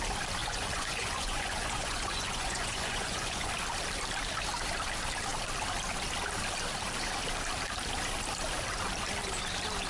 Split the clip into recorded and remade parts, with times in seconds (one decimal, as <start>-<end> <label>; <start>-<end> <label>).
0.0-0.4 recorded; 0.4-3.5 remade; 3.5-9.9 recorded